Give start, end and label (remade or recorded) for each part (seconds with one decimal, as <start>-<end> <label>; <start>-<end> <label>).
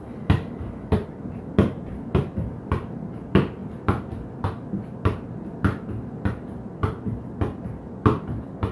0.0-3.6 recorded; 3.6-4.4 remade; 4.4-8.7 recorded